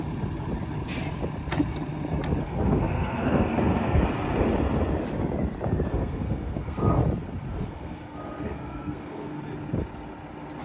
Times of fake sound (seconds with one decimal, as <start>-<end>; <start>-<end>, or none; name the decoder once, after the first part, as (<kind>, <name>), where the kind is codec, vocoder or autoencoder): 2.4-4.0 (codec, SNAC); 5.9-7.0; 7.5-9.4